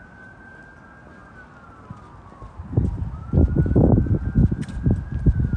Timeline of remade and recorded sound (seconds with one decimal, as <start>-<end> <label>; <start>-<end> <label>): 0.0-5.6 recorded